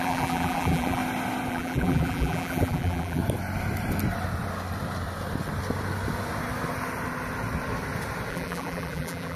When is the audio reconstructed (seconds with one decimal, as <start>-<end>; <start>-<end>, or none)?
0.0-1.0; 1.5-3.2; 8.3-9.4